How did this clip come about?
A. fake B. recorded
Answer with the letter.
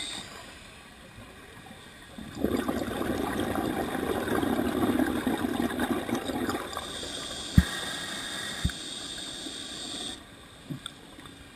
B